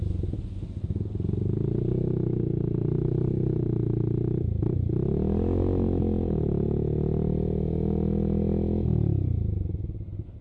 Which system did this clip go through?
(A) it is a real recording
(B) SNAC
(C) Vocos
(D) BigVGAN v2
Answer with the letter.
A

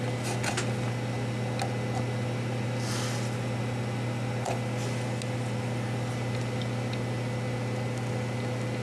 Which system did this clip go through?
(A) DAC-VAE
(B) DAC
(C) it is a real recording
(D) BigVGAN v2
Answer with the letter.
C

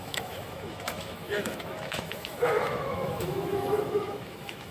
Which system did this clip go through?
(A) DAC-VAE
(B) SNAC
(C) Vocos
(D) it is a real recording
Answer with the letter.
A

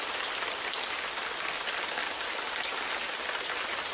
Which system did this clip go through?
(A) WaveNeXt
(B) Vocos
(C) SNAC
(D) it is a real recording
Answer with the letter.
D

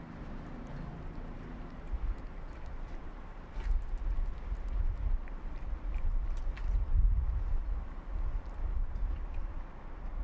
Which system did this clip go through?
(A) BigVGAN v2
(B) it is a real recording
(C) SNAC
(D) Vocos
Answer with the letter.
B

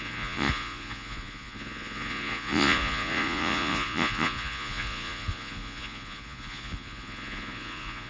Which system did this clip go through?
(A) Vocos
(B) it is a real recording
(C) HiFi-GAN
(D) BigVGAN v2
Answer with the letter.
A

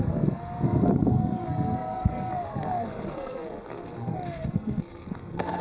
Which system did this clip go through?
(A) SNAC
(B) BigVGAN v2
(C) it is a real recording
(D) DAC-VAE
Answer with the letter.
A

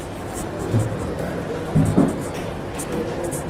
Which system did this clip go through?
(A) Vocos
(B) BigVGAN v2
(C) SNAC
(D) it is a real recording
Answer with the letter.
D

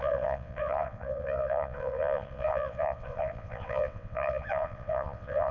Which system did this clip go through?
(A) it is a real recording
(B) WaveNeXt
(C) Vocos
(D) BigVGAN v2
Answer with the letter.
B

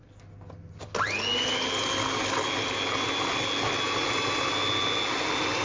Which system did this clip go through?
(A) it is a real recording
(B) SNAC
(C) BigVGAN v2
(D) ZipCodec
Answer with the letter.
A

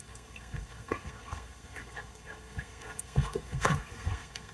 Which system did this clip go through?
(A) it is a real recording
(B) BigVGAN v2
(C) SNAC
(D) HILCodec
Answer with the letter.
C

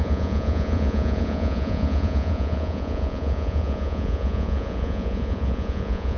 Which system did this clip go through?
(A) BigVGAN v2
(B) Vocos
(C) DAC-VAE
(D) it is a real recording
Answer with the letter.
B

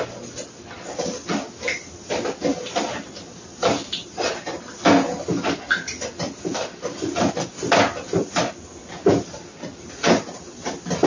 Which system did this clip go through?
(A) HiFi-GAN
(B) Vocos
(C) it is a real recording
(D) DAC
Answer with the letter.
C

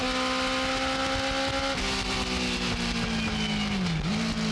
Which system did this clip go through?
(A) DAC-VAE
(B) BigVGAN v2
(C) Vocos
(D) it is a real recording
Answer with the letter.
D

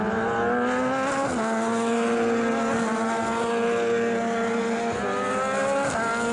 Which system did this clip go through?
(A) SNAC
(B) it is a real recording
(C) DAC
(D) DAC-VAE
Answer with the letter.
B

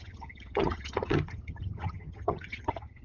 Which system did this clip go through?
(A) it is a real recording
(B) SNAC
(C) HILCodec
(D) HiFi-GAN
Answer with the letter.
D